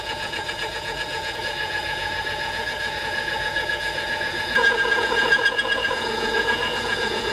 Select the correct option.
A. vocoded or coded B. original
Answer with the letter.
A